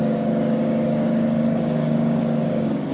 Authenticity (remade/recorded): remade